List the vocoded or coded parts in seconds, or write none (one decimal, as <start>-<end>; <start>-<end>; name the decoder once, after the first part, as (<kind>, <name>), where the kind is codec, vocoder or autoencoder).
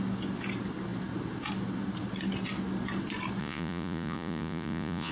3.4-5.1 (vocoder, Vocos)